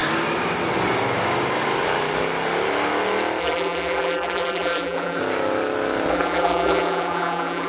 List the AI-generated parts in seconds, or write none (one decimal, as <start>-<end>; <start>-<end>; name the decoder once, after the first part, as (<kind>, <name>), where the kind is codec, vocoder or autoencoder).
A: 3.4-5.2 (vocoder, BigVGAN v2); 6.1-7.7